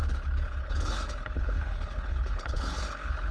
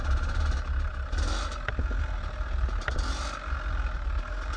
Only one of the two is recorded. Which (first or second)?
second